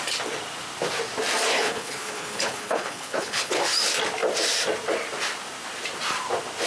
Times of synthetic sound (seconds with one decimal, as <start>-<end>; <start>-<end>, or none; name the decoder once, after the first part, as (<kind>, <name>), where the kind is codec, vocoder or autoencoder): 1.5-3.6 (codec, HILCodec)